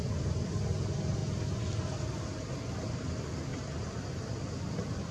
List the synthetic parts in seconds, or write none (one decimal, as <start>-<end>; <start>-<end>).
none